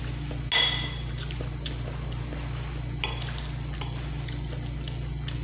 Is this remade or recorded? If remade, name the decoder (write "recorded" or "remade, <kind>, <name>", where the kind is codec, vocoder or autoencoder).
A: recorded